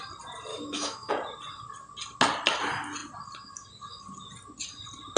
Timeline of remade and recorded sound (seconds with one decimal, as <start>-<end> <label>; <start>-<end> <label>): 0.0-0.5 recorded; 0.5-1.1 remade; 1.1-5.2 recorded